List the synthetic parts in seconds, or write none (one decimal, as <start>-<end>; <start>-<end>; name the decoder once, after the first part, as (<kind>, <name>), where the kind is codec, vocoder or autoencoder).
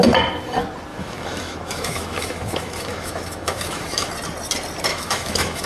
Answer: 0.9-4.1 (autoencoder, DAC-VAE); 4.9-5.7